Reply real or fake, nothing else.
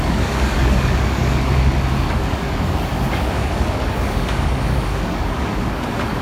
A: fake